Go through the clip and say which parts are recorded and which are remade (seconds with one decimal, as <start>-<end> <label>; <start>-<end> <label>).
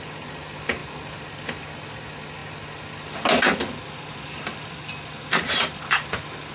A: 0.0-6.5 recorded